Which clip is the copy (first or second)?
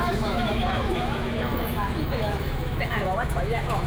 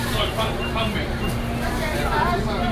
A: first